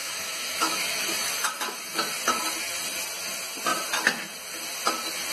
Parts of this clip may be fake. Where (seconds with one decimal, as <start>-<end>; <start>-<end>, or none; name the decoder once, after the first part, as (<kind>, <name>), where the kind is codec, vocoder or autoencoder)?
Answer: 0.0-1.8 (autoencoder, DAC-VAE)